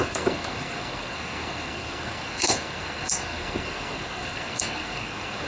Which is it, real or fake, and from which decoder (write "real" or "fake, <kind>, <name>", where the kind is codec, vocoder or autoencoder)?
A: fake, codec, SNAC